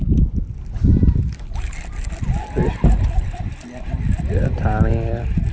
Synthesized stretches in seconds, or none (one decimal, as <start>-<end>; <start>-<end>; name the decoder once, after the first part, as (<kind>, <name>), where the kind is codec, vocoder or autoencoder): none